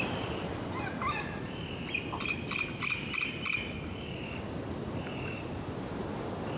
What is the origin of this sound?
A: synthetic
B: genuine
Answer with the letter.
B